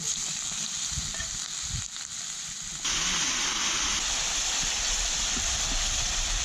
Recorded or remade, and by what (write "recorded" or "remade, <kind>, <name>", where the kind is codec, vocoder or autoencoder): recorded